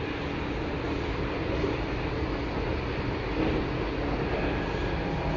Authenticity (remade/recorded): recorded